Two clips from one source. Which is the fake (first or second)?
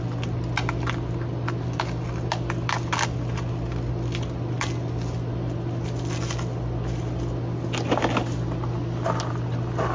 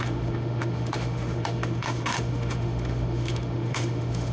second